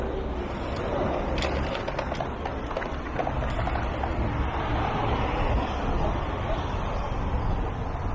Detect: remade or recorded recorded